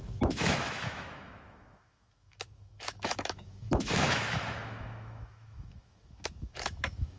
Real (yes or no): no